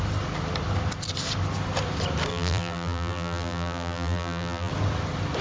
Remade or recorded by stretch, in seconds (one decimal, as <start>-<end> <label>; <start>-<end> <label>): 0.0-2.3 recorded; 2.3-4.7 remade; 4.7-5.4 recorded